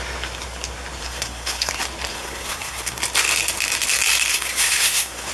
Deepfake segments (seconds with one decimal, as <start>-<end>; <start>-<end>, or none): 1.0-1.7; 2.1-3.0; 4.3-5.3